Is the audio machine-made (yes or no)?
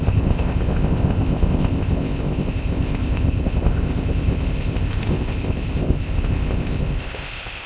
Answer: yes